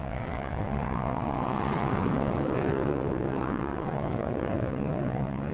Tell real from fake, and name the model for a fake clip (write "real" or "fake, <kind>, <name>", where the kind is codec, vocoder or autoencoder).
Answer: fake, vocoder, WaveNeXt